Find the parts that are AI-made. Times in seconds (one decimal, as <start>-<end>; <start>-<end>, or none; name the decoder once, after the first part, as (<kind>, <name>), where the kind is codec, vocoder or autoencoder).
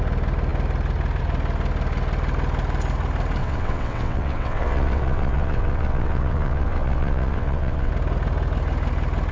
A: 3.4-7.9 (vocoder, WaveNeXt)